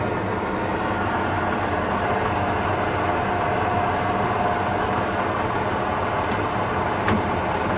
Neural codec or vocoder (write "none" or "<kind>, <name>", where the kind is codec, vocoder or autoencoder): none